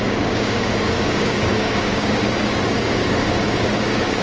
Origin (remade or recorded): remade